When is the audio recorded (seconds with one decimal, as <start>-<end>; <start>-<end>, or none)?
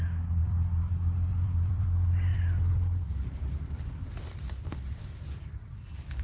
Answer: 0.0-0.4; 0.9-1.3; 5.0-6.2